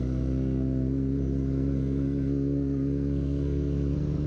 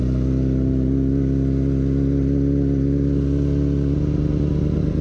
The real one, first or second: second